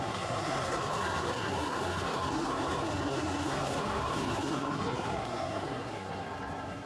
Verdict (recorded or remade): remade